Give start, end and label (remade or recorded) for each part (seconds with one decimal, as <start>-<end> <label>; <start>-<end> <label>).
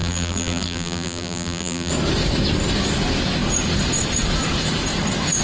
0.0-1.9 remade; 1.9-5.4 recorded